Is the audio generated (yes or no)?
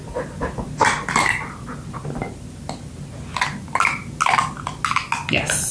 no